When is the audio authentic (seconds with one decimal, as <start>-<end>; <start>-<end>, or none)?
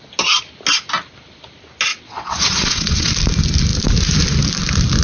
0.0-1.9; 3.1-5.0